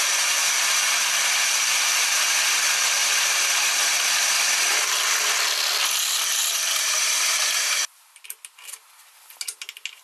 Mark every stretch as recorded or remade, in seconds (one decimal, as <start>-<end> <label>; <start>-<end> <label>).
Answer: 0.0-1.7 recorded; 1.7-2.3 remade; 2.3-3.0 recorded; 3.0-7.4 remade; 7.4-10.0 recorded